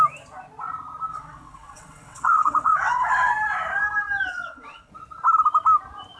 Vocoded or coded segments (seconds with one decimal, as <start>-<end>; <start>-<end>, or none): 1.1-3.3; 4.3-4.9